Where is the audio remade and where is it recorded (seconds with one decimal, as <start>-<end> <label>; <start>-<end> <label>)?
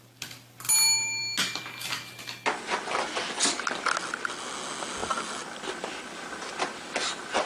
0.0-7.5 recorded